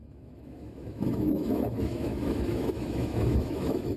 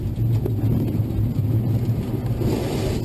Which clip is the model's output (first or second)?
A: first